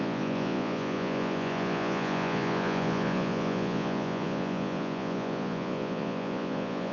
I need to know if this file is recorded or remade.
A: remade